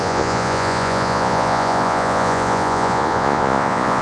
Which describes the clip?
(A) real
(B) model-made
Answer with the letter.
B